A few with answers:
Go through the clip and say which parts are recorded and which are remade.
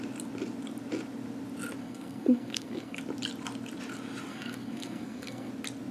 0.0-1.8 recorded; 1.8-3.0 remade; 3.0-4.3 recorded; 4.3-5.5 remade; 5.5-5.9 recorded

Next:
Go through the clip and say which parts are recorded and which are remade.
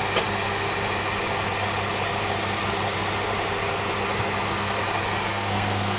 0.0-5.3 recorded; 5.3-6.0 remade